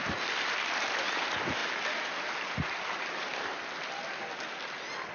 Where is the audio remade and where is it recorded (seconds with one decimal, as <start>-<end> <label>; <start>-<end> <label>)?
0.0-5.1 recorded